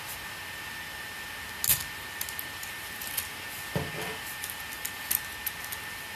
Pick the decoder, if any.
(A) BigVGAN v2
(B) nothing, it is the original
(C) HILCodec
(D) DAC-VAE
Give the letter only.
B